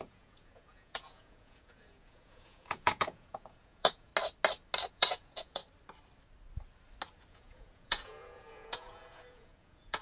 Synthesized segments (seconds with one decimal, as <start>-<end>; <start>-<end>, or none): 0.0-4.1; 4.9-5.6; 7.3-10.0